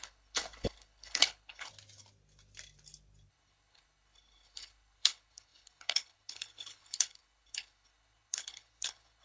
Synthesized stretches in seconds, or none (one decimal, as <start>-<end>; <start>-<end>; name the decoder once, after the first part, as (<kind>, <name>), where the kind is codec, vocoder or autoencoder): 0.0-1.7 (codec, HILCodec); 3.3-9.2